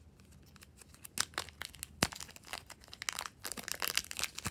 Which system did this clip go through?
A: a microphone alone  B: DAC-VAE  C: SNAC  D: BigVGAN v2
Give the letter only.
A